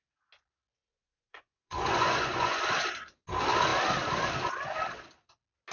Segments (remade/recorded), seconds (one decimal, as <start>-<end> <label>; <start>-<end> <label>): 0.0-0.9 recorded; 0.9-2.6 remade; 2.6-5.7 recorded